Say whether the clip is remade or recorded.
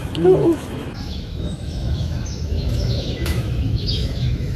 remade